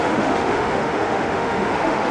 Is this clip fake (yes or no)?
yes